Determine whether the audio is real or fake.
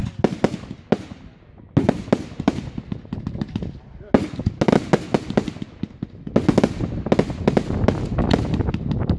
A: real